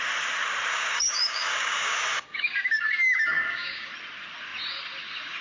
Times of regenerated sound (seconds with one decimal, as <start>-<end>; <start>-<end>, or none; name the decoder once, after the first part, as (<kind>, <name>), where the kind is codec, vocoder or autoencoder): 0.7-3.9 (codec, DAC)